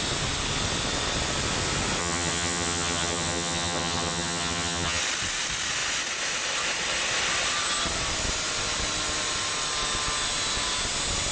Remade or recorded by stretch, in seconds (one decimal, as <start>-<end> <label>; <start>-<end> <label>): 0.0-2.0 recorded; 2.0-5.0 remade; 5.0-11.3 recorded